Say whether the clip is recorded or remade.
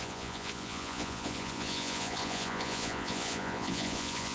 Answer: remade